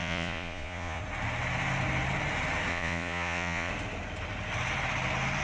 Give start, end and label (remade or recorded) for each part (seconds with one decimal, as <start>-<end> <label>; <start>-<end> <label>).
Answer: 0.0-1.0 remade; 1.0-2.7 recorded; 2.7-3.7 remade; 3.7-5.4 recorded